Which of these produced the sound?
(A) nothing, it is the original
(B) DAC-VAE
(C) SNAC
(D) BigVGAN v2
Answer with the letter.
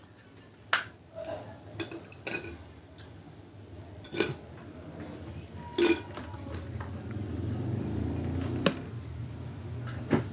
A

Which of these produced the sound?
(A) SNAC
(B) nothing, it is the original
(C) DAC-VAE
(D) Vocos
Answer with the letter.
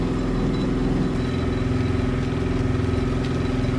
B